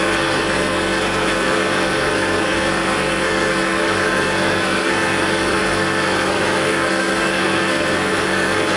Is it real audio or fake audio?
fake